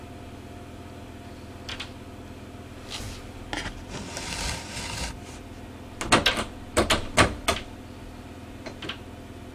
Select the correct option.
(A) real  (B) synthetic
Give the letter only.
A